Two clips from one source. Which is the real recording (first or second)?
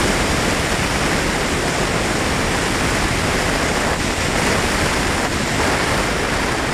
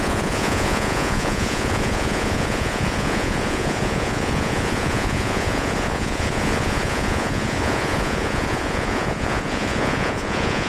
first